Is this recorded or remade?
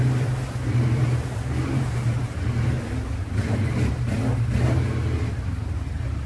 recorded